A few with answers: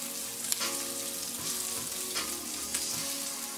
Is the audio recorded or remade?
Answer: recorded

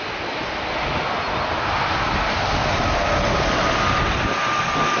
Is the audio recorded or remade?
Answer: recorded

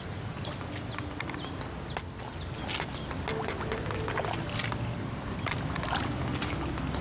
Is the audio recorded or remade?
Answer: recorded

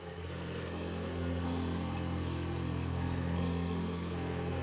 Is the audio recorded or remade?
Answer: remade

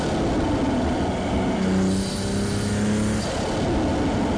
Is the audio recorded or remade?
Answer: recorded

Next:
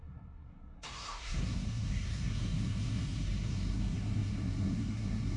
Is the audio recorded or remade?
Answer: remade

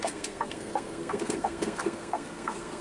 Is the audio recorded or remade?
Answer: remade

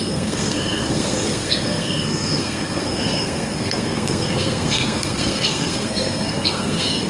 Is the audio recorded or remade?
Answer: remade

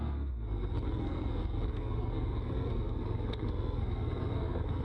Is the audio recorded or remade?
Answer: remade